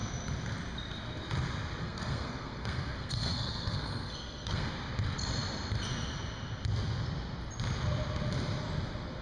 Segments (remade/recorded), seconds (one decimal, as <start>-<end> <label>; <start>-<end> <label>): 0.0-1.8 recorded; 1.8-4.7 remade; 4.7-9.2 recorded